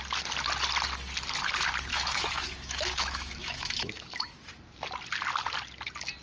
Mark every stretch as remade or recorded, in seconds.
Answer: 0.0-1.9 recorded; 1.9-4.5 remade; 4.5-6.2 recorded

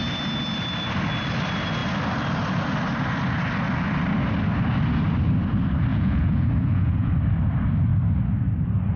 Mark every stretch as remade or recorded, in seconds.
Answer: 0.0-5.9 recorded; 5.9-7.1 remade; 7.1-9.0 recorded

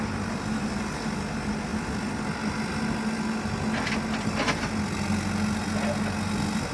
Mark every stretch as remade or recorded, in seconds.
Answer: 0.0-6.7 recorded